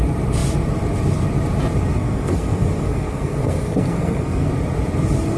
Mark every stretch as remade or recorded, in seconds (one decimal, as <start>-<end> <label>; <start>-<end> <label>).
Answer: 0.0-1.9 recorded; 1.9-4.5 remade; 4.5-5.4 recorded